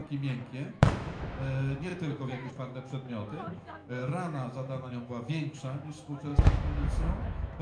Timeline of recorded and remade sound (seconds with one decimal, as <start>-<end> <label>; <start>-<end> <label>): 0.0-0.7 recorded; 0.7-7.6 remade